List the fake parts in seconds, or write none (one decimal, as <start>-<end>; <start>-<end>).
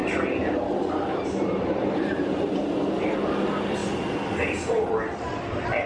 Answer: 0.0-2.6